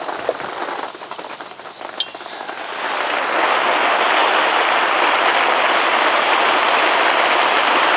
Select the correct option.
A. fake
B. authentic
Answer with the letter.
B